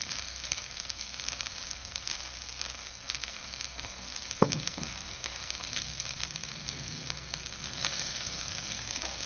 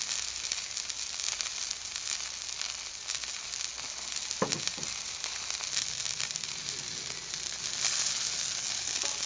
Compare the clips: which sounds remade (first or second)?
first